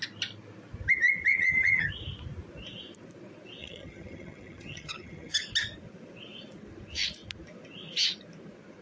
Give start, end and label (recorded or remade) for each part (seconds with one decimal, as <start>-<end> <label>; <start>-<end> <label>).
0.0-1.3 recorded; 1.3-1.9 remade; 1.9-3.6 recorded; 3.6-5.4 remade; 5.4-8.8 recorded